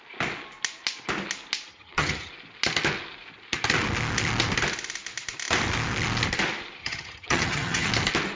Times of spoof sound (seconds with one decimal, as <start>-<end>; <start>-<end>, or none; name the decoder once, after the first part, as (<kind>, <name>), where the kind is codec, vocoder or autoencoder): 1.7-2.3 (vocoder, HiFi-GAN); 6.8-7.9